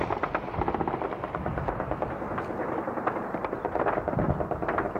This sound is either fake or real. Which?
real